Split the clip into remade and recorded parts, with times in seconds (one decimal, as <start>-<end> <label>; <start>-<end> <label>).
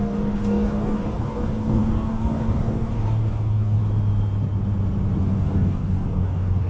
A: 0.0-3.8 remade; 3.8-5.2 recorded; 5.2-6.7 remade